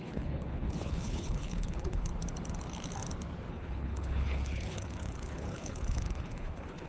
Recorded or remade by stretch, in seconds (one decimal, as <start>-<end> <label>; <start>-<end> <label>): 0.0-2.1 remade; 2.1-3.5 recorded; 3.5-6.9 remade